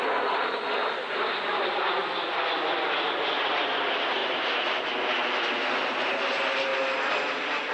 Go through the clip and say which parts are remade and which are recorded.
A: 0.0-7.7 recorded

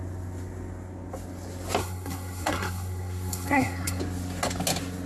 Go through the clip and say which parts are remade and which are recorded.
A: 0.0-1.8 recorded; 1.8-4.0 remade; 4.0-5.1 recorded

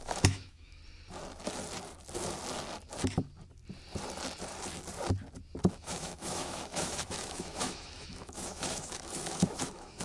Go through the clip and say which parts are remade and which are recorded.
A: 0.0-0.8 remade; 0.8-5.7 recorded; 5.7-10.0 remade

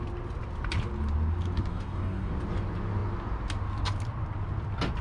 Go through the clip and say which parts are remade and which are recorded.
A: 0.0-1.7 recorded; 1.7-2.3 remade; 2.3-5.0 recorded

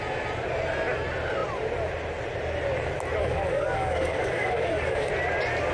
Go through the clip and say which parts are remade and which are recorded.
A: 0.0-3.2 recorded; 3.2-5.1 remade; 5.1-5.7 recorded

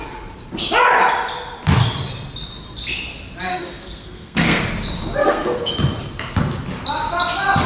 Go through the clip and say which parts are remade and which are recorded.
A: 0.0-3.5 recorded; 3.5-4.6 remade; 4.6-5.2 recorded; 5.2-5.7 remade; 5.7-7.7 recorded

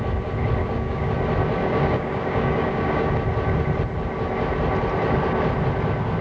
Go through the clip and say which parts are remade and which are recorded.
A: 0.0-0.6 recorded; 0.6-1.1 remade; 1.1-1.6 recorded; 1.6-3.1 remade; 3.1-6.2 recorded

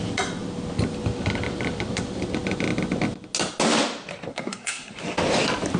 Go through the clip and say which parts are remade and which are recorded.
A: 0.0-4.3 recorded; 4.3-4.9 remade; 4.9-5.8 recorded